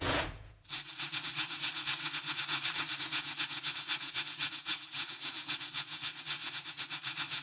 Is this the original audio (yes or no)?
no